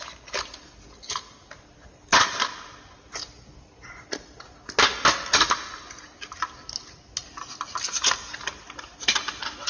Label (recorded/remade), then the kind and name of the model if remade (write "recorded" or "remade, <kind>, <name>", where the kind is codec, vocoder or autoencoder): recorded